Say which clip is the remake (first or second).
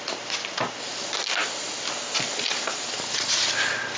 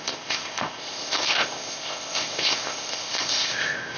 second